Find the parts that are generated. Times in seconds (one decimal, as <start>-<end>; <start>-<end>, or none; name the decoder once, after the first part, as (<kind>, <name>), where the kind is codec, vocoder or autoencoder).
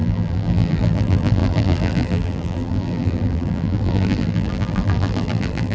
0.0-5.7 (vocoder, BigVGAN v2)